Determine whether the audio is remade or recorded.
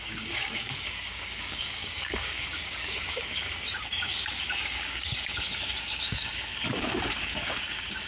remade